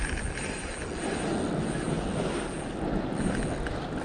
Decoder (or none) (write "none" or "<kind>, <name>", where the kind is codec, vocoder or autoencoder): none